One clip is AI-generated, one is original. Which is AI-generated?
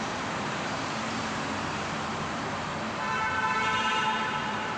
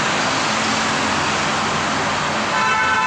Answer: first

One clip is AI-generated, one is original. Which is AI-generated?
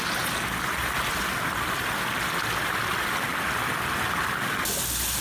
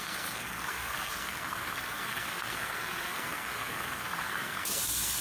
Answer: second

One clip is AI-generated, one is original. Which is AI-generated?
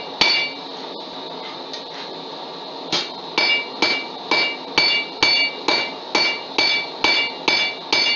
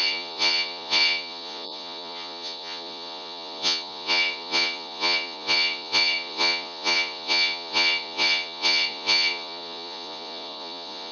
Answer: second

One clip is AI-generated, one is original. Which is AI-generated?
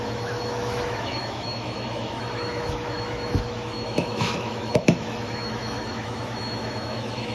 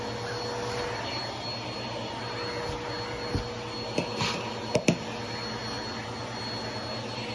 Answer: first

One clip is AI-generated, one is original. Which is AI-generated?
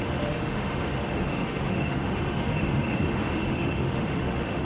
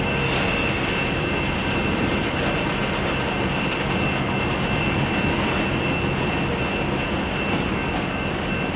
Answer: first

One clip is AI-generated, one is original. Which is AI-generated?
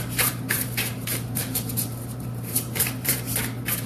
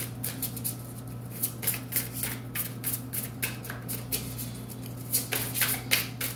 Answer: first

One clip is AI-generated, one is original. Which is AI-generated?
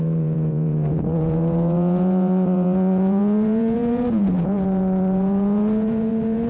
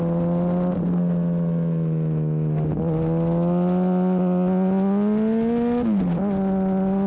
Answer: first